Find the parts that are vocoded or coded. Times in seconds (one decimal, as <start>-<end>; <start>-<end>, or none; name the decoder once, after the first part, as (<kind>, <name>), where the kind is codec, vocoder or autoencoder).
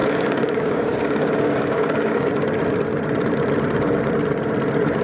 0.0-2.3 (codec, DAC)